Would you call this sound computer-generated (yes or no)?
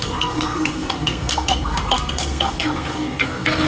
yes